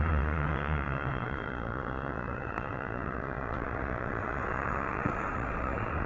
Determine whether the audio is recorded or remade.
remade